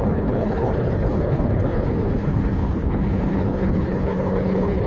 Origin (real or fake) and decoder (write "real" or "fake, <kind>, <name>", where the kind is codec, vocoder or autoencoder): fake, codec, HILCodec